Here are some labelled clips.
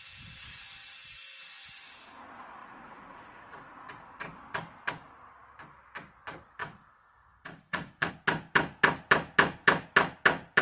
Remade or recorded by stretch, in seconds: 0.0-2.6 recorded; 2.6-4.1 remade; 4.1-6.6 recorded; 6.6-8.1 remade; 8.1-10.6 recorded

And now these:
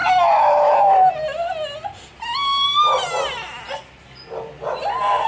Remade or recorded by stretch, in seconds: 0.0-5.3 recorded

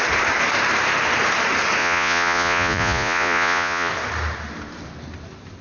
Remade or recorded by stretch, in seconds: 0.0-1.8 recorded; 1.8-3.9 remade; 3.9-5.6 recorded

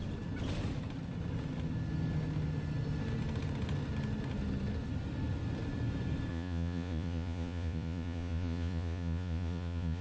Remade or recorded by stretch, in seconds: 0.0-6.3 recorded; 6.3-10.0 remade

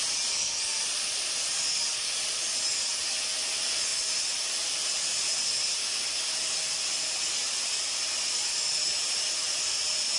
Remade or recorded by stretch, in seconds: 0.0-10.2 recorded